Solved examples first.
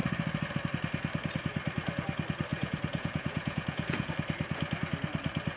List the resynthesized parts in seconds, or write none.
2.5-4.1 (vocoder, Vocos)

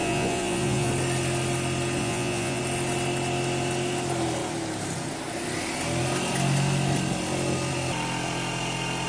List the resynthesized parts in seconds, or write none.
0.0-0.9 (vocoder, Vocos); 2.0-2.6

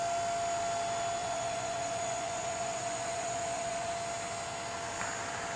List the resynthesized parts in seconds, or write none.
1.2-3.9 (vocoder, Vocos)

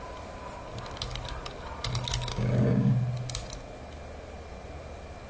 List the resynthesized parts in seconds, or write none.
2.3-2.9 (codec, DAC)

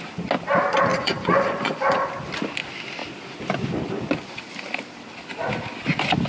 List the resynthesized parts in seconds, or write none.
0.9-2.1 (vocoder, Vocos)

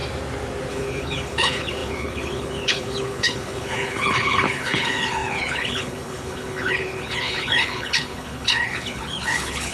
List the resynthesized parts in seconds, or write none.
0.7-9.7 (codec, HILCodec)

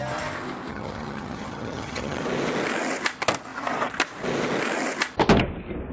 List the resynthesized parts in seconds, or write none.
0.7-2.2 (vocoder, HiFi-GAN)

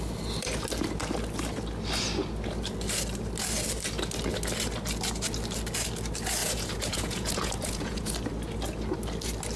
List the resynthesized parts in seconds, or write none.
6.4-8.1 (vocoder, Vocos)